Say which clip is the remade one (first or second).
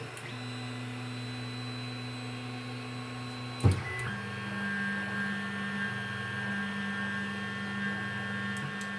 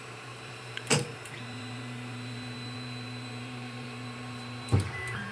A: second